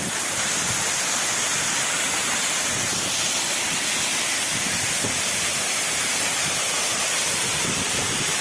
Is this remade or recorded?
remade